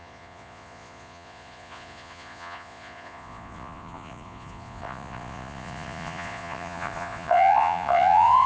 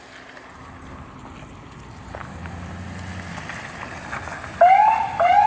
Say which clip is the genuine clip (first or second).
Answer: second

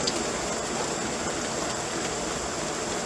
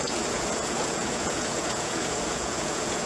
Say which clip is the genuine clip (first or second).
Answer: first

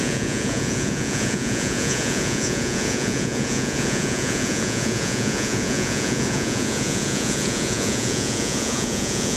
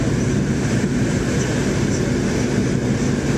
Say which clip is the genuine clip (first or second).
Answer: second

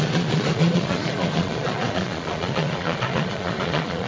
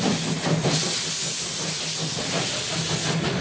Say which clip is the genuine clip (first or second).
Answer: second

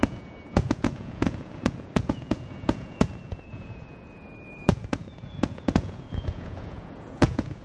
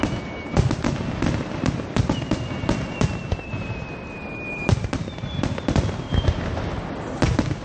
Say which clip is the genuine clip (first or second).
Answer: second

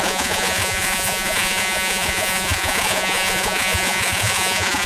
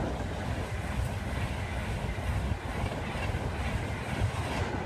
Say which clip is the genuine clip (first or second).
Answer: second